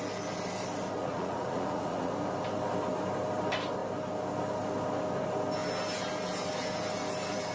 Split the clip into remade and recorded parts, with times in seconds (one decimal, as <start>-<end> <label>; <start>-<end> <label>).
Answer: 0.0-1.0 recorded; 1.0-2.1 remade; 2.1-7.5 recorded